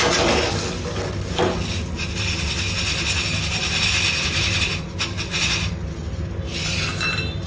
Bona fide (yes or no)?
yes